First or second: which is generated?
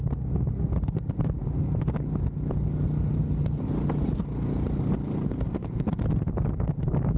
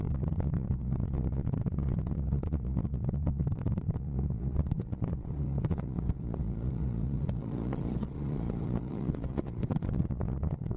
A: second